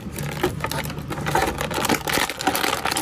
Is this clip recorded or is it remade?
recorded